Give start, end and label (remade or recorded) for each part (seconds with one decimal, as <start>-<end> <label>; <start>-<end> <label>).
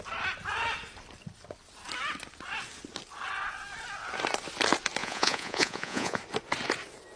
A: 0.0-5.0 recorded; 5.0-6.2 remade; 6.2-7.2 recorded